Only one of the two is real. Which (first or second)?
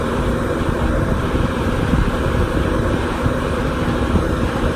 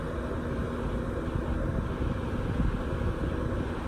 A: second